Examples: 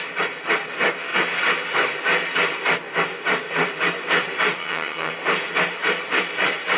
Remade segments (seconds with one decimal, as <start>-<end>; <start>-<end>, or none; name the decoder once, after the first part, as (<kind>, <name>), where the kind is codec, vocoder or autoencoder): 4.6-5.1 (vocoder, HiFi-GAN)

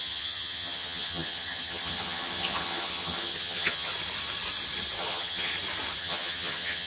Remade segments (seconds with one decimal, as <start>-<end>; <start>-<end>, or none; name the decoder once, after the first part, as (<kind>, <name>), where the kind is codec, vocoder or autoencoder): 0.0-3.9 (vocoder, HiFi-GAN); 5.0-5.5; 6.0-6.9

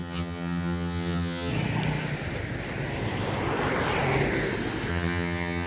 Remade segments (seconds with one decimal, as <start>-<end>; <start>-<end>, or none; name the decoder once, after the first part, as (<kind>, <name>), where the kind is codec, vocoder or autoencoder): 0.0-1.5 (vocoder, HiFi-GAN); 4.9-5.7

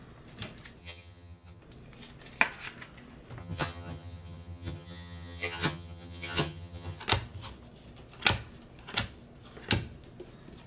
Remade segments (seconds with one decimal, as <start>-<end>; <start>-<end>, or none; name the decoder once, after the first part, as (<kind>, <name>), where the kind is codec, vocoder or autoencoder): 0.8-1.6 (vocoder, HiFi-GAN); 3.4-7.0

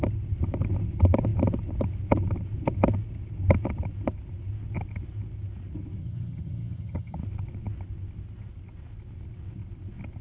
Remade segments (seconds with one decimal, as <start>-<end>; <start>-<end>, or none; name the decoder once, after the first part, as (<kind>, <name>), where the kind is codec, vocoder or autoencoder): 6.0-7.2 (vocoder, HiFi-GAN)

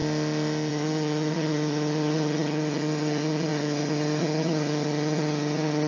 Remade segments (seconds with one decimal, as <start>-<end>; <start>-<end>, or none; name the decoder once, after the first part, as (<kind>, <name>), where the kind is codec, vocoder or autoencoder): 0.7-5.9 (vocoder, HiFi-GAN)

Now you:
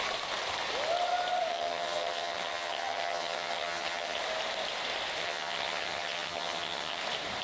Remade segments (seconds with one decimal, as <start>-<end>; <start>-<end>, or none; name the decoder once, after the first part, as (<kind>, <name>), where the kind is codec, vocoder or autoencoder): 1.5-4.2 (vocoder, HiFi-GAN); 5.2-7.0